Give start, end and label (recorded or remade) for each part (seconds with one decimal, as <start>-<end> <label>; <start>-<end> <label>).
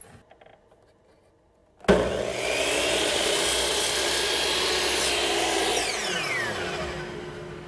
0.0-7.7 recorded